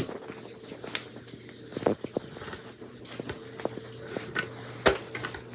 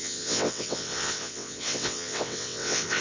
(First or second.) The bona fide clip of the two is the first